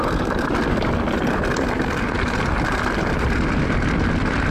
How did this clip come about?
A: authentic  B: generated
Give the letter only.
A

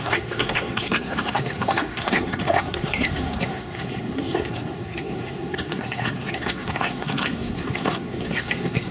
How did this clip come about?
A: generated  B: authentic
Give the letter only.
A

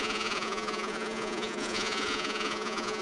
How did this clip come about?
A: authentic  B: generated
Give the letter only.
B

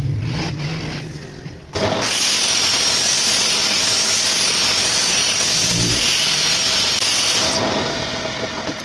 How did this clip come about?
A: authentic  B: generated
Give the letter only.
A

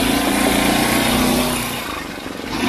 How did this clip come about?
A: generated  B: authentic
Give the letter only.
A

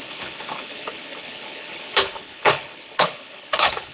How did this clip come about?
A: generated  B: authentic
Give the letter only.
A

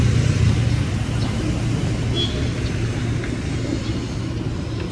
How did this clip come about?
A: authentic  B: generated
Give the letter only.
A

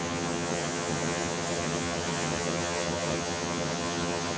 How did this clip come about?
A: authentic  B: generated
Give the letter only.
B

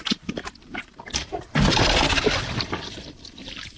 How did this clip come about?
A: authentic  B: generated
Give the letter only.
A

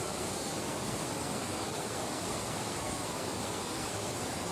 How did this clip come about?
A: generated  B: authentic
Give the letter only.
A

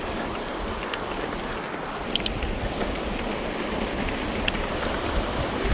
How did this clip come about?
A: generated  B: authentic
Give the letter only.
B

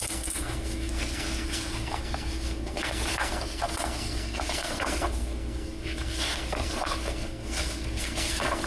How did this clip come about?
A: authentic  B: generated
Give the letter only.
B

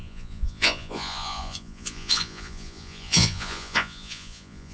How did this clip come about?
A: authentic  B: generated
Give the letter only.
B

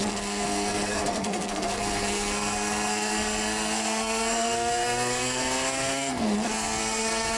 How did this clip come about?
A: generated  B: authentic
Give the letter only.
A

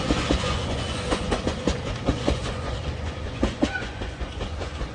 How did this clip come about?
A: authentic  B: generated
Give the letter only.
B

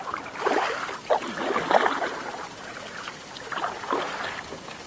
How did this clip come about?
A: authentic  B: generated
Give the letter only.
A